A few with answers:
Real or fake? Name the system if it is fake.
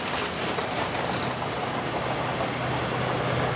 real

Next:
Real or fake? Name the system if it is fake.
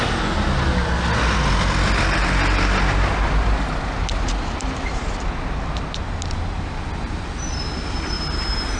real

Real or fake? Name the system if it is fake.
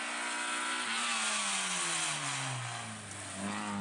real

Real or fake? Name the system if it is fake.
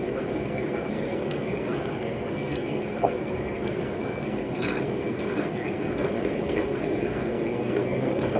fake, codec, SNAC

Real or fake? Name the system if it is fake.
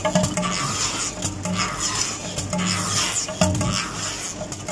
real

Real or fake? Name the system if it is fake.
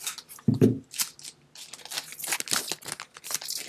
real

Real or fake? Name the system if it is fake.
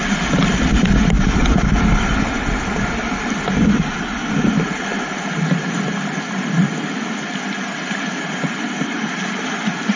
real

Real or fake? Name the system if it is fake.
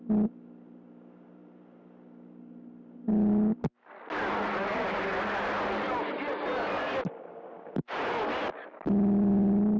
real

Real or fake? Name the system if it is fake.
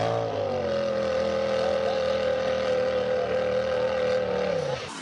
real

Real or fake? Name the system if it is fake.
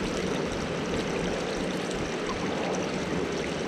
real